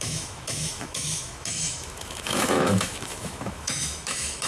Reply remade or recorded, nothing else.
remade